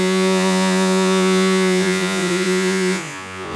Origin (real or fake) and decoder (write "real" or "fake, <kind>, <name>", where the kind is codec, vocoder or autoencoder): fake, vocoder, Vocos